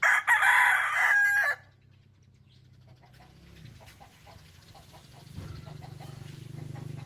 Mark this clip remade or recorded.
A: recorded